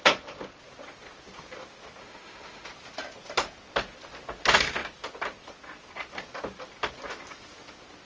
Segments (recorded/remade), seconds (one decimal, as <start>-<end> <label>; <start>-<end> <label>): 0.0-2.0 recorded; 2.0-2.7 remade; 2.7-8.1 recorded